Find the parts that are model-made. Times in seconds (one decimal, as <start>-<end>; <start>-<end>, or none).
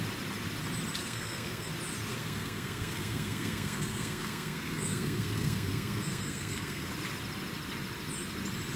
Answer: 1.0-1.7; 2.1-6.9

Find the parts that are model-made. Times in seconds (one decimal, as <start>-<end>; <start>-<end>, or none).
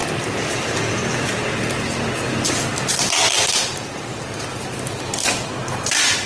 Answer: none